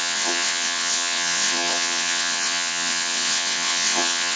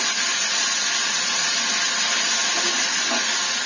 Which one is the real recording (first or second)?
second